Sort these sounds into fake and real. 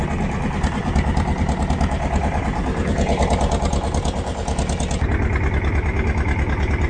real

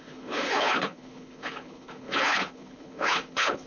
fake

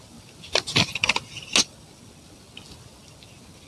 real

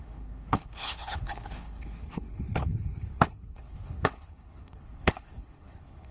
fake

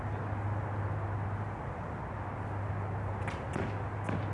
real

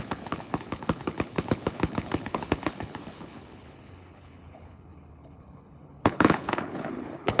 fake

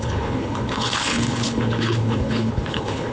fake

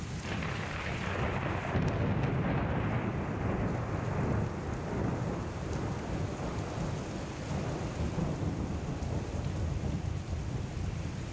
real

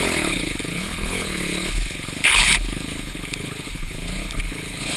fake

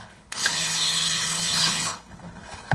fake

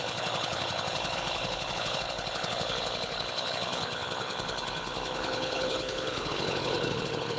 fake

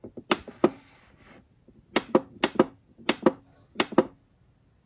real